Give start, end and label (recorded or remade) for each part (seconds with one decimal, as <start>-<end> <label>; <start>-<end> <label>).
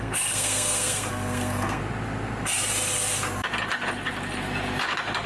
0.0-1.8 remade; 1.8-5.3 recorded